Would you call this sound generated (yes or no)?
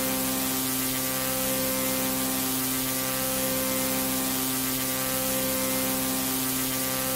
no